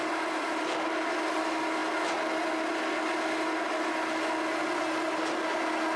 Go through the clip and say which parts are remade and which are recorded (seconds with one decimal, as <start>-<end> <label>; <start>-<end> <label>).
0.0-1.2 remade; 1.2-6.0 recorded